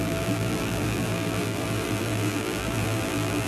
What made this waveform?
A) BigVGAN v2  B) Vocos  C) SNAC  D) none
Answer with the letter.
A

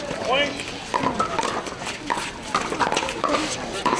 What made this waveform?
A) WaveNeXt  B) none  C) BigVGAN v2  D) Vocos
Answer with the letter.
B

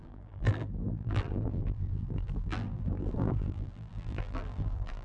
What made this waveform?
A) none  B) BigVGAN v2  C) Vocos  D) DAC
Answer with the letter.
B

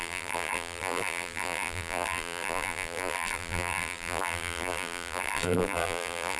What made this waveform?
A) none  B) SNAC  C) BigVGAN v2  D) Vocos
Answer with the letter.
C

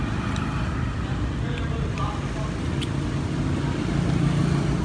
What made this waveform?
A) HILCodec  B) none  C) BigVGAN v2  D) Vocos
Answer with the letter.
B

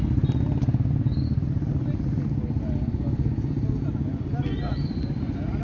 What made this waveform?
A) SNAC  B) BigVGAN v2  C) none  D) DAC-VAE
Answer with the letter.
C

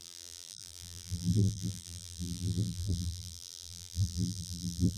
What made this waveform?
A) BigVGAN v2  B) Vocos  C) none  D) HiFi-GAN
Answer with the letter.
A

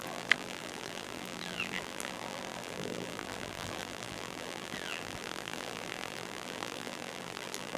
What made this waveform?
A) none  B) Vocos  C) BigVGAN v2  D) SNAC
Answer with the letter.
C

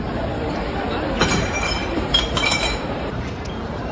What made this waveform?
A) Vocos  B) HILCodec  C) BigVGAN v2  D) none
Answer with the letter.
C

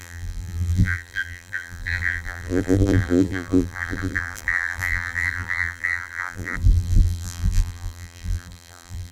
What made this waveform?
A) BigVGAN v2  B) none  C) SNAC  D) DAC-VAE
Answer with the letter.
A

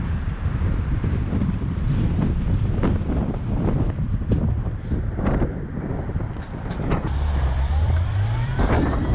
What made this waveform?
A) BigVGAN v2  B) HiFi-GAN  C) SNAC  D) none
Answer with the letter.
A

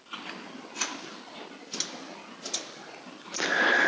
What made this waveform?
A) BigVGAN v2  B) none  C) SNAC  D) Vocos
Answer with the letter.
B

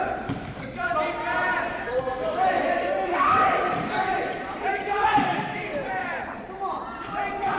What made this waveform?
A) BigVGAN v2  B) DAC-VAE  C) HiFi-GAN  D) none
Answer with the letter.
A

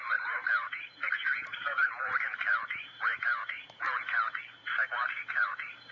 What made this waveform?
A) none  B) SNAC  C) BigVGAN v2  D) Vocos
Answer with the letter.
C